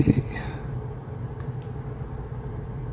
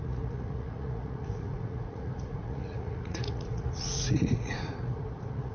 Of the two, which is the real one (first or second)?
first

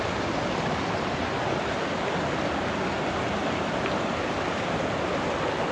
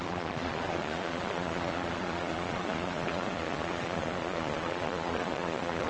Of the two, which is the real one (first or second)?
first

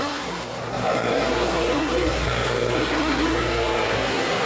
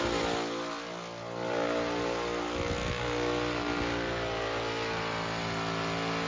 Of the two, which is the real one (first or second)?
second